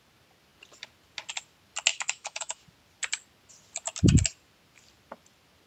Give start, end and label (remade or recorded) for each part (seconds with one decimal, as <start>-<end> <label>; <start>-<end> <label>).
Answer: 0.0-1.9 recorded; 1.9-2.6 remade; 2.6-5.7 recorded